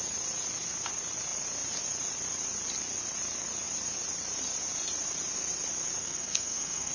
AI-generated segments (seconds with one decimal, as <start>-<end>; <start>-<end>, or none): 6.0-6.9